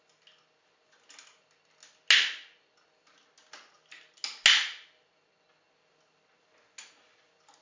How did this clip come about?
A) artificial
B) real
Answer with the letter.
B